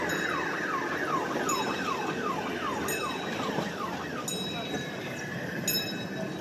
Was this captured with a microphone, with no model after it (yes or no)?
yes